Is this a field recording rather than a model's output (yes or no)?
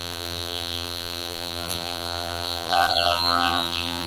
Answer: no